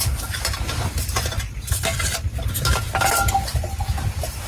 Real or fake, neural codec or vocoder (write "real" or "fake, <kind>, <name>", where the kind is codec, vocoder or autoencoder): real